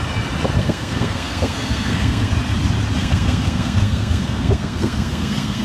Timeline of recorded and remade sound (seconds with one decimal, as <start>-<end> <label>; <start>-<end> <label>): 0.0-0.6 recorded; 0.6-2.3 remade; 2.3-3.0 recorded; 3.0-5.6 remade